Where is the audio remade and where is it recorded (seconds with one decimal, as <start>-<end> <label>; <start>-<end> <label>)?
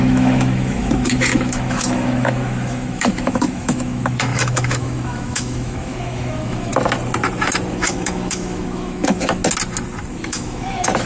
0.0-6.7 remade; 6.7-7.7 recorded; 7.7-9.4 remade; 9.4-10.1 recorded; 10.1-11.1 remade